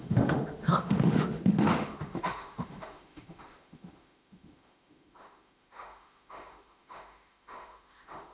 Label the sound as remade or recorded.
remade